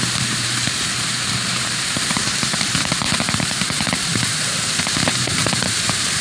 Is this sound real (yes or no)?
no